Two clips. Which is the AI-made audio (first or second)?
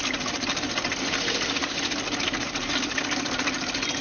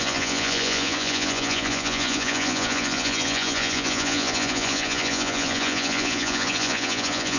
second